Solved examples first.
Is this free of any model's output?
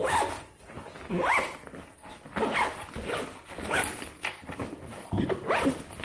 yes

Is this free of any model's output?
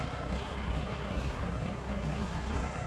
no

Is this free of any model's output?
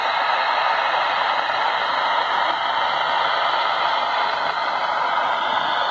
yes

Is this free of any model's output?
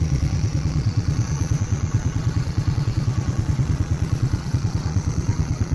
no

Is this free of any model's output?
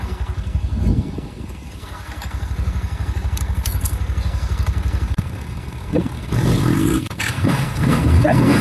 no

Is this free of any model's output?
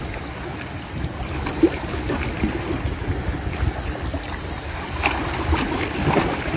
yes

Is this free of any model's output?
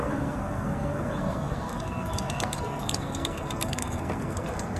no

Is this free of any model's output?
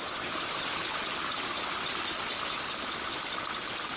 yes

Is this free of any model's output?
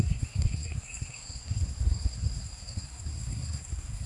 no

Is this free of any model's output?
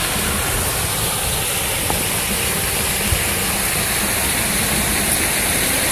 yes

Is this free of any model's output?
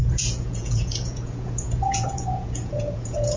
no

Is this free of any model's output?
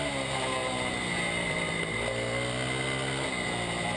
yes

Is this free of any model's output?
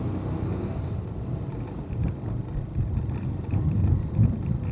yes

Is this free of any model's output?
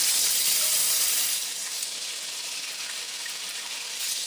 yes